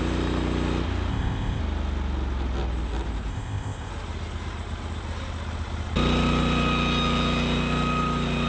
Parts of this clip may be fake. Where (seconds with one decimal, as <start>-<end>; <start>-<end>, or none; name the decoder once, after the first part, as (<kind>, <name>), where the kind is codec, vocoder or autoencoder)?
1.1-1.6 (codec, ZipCodec); 3.3-3.9